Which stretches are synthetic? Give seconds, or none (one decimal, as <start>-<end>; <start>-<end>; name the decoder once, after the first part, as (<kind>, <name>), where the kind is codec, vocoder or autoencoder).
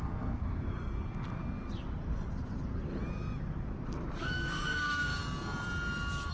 0.0-0.4 (codec, SNAC); 4.2-5.2